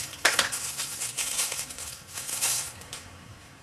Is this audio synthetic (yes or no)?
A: yes